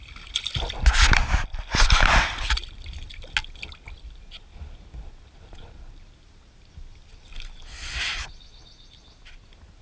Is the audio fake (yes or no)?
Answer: no